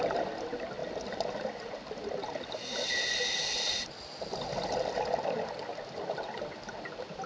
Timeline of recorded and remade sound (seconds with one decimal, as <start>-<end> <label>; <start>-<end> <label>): 0.0-7.3 recorded